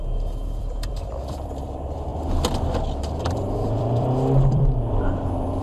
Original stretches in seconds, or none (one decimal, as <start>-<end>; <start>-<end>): 2.1-3.2